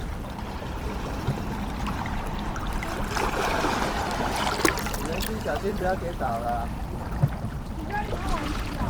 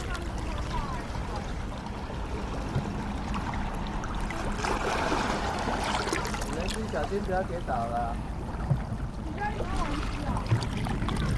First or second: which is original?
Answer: second